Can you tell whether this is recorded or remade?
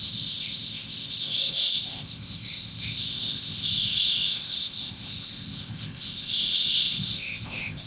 remade